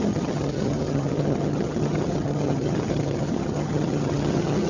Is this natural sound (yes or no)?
no